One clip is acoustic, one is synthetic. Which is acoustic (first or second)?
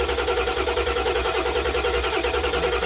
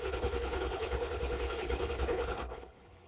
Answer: first